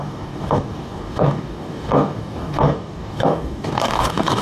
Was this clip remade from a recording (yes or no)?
yes